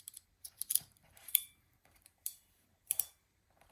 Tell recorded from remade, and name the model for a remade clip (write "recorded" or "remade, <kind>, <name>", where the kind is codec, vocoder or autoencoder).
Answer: remade, vocoder, BigVGAN v2